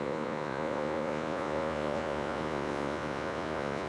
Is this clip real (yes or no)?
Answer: no